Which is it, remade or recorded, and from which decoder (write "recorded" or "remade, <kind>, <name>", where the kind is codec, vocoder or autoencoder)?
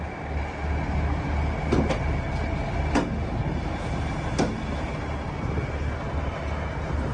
recorded